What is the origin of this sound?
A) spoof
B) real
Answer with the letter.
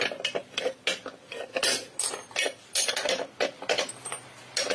B